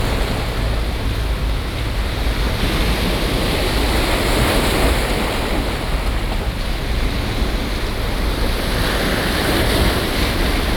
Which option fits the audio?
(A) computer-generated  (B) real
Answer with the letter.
B